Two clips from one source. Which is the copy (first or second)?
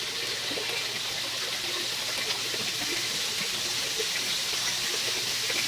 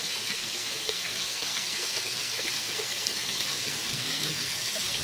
second